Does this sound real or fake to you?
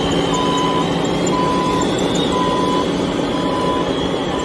real